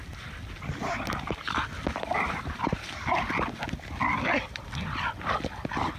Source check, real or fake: real